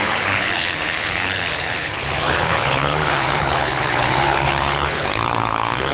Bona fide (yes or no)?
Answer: no